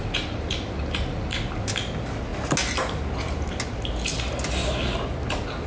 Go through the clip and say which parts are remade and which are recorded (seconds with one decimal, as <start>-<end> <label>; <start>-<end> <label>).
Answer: 0.0-5.7 recorded